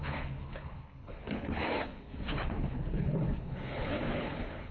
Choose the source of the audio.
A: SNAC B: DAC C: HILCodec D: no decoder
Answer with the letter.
C